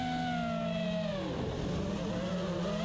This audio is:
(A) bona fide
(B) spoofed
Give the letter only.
A